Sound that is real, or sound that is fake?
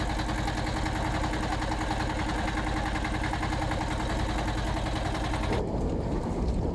real